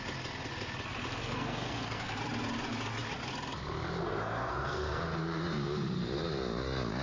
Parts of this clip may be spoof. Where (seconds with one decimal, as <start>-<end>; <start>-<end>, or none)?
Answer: 1.2-2.2; 4.0-5.0